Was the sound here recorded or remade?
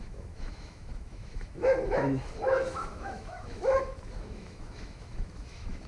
remade